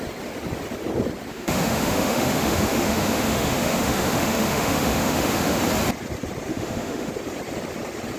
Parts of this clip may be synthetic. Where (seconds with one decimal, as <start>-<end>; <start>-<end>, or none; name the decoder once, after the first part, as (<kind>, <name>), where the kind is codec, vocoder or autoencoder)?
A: 1.3-5.6 (autoencoder, DAC-VAE); 6.5-7.1